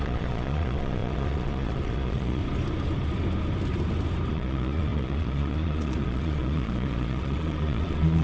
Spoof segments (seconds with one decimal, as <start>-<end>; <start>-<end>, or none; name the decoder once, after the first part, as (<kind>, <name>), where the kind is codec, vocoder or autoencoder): 0.0-2.4 (vocoder, Vocos); 4.3-8.2